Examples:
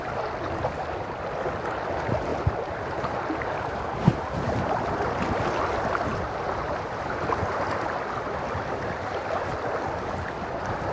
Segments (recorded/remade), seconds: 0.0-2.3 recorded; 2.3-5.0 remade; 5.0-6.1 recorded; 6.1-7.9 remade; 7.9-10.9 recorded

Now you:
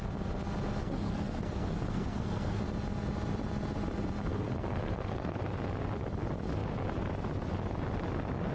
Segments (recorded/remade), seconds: 0.0-0.8 recorded; 0.8-2.6 remade; 2.6-4.3 recorded; 4.3-5.4 remade; 5.4-8.5 recorded